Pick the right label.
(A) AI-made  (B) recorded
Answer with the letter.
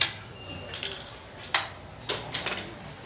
B